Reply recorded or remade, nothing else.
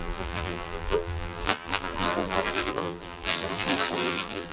remade